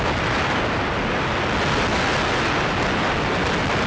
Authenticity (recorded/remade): recorded